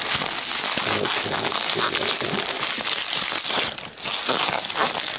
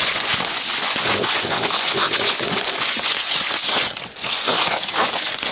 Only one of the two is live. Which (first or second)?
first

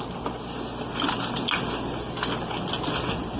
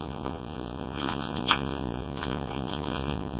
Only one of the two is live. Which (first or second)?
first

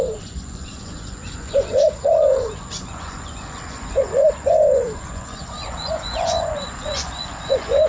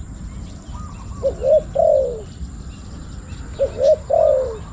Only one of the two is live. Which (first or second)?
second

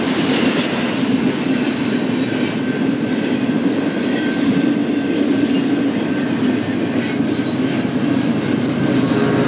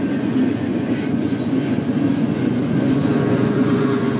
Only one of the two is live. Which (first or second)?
first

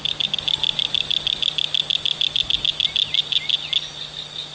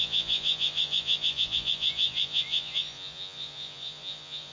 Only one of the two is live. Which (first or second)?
first